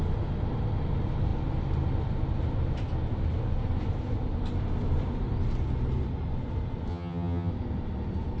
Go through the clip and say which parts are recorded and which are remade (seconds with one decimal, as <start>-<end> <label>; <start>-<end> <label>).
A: 0.0-6.9 recorded; 6.9-7.5 remade; 7.5-8.4 recorded

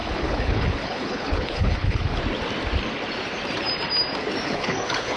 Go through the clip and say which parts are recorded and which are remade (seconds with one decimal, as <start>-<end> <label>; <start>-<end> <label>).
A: 0.0-2.2 remade; 2.2-4.4 recorded; 4.4-5.2 remade

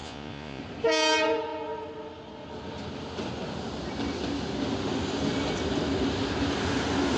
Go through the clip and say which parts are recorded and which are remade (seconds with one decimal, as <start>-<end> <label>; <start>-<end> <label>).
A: 0.0-0.6 remade; 0.6-7.2 recorded

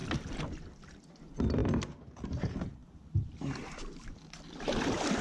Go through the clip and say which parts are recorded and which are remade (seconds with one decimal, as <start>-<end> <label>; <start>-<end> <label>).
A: 0.0-5.2 recorded

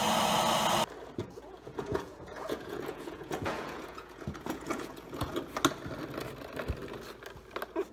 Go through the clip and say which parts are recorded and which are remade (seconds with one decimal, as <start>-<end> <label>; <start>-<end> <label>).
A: 0.0-1.2 recorded; 1.2-5.3 remade; 5.3-7.9 recorded

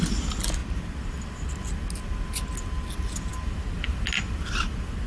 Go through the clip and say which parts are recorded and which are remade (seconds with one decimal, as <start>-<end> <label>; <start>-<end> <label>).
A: 0.0-5.1 recorded

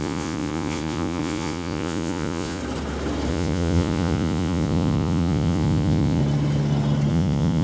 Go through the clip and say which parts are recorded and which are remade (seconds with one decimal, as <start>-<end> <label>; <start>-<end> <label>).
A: 0.0-2.6 remade; 2.6-3.3 recorded; 3.3-6.2 remade; 6.2-7.1 recorded; 7.1-7.6 remade